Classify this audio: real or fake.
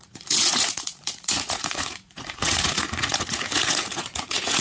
fake